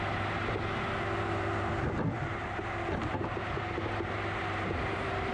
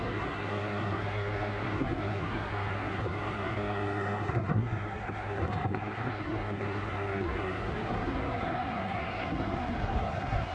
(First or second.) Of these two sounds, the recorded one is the first